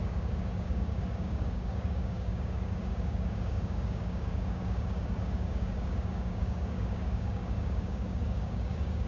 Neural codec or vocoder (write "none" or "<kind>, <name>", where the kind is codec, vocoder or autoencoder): codec, DAC